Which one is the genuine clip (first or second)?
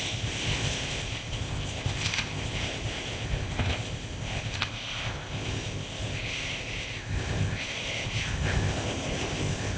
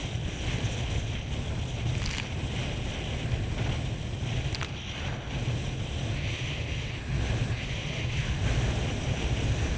second